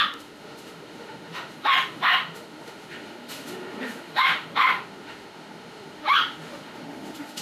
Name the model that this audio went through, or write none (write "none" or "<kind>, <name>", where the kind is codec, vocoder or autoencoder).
autoencoder, DAC-VAE